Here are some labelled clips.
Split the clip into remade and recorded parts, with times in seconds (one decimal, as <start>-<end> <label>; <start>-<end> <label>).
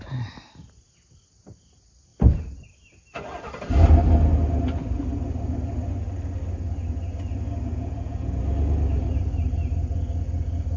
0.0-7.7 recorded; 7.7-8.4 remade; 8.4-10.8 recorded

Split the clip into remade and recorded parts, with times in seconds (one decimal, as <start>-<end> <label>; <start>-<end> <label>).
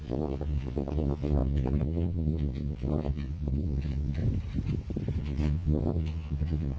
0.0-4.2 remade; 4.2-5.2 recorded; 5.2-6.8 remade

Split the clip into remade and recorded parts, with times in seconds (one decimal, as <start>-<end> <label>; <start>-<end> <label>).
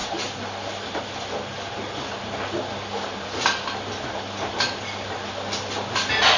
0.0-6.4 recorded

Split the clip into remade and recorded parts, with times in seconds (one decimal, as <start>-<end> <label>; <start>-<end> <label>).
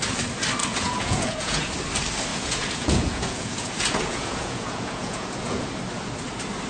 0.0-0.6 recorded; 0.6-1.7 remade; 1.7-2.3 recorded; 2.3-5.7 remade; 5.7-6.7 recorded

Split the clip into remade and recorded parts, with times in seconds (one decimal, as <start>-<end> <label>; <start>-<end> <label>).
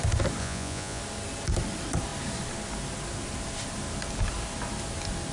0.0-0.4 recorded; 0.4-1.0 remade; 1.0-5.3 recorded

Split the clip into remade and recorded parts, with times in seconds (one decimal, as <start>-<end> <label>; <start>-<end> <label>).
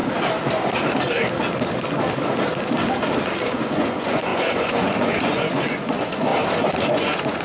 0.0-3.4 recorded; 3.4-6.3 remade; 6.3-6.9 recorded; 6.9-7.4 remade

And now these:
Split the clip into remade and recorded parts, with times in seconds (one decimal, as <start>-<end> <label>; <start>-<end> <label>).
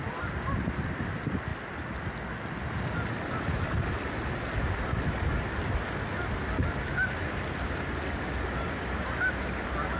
0.0-10.0 recorded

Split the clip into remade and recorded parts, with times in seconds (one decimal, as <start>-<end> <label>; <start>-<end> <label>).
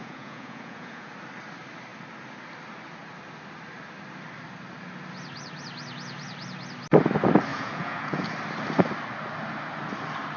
0.0-1.1 remade; 1.1-7.5 recorded; 7.5-8.3 remade; 8.3-10.4 recorded